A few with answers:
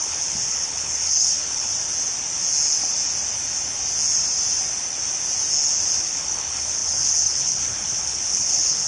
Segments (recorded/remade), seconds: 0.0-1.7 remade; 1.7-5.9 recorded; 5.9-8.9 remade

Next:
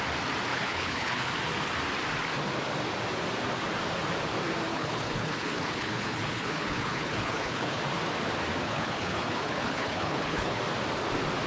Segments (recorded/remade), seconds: 0.0-0.5 recorded; 0.5-1.3 remade; 1.3-4.7 recorded; 4.7-7.8 remade; 7.8-8.6 recorded; 8.6-10.6 remade; 10.6-11.5 recorded

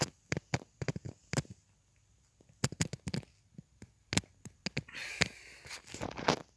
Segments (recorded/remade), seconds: 0.0-6.6 recorded

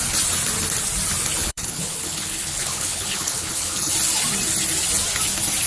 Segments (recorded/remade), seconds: 0.0-1.4 recorded; 1.4-3.9 remade; 3.9-5.7 recorded